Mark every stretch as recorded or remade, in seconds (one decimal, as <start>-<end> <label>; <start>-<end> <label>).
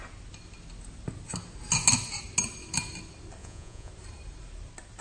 0.0-3.4 recorded; 3.4-3.9 remade; 3.9-5.0 recorded